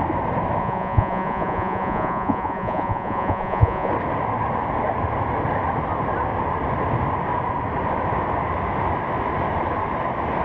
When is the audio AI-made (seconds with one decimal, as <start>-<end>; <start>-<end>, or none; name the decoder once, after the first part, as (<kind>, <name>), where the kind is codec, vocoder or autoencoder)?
0.6-3.9 (vocoder, Vocos)